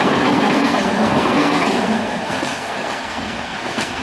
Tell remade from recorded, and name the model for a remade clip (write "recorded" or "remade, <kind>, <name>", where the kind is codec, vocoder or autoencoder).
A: remade, codec, SNAC